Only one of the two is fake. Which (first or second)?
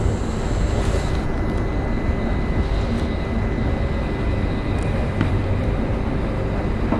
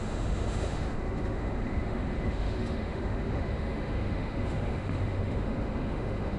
second